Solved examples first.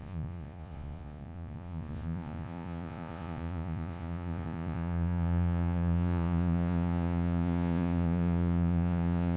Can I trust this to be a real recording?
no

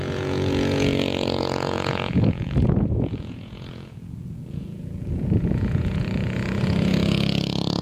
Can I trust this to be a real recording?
no